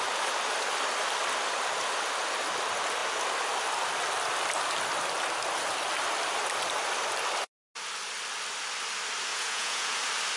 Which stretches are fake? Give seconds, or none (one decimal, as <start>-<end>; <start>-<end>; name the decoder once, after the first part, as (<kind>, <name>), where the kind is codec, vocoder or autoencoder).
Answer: 9.3-10.0 (vocoder, Vocos)